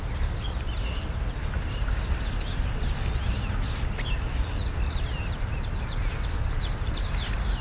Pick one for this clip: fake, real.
real